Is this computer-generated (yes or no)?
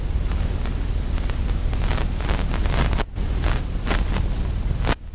no